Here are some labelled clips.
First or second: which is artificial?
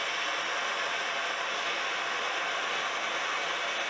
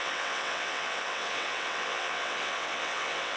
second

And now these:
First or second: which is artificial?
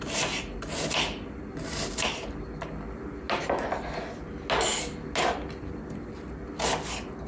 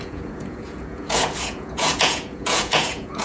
second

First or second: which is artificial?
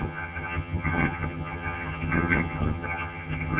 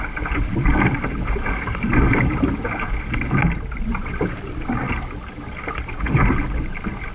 first